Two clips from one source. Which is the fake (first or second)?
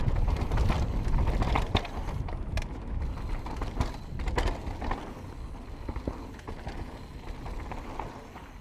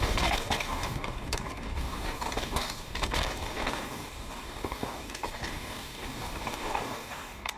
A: second